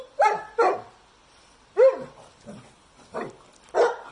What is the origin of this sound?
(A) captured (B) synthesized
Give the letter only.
A